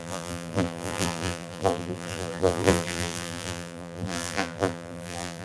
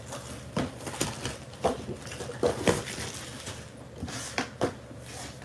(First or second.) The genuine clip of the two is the second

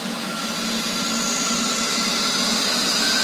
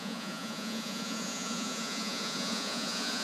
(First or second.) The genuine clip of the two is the first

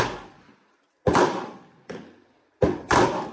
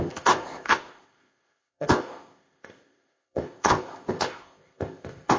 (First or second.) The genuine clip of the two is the first